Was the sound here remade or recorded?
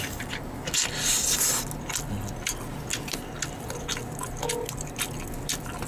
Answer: recorded